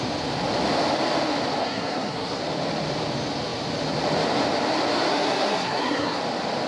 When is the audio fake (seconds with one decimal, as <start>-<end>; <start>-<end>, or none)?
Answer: 1.6-2.4; 5.1-6.2